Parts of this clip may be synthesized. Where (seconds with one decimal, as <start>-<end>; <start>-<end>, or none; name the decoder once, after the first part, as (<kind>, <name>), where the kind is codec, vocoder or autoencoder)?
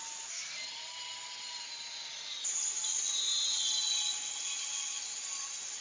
none